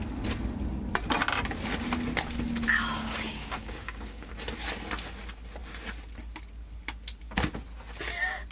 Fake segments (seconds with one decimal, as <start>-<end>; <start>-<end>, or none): 3.0-4.3